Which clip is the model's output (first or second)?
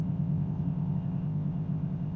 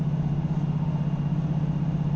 first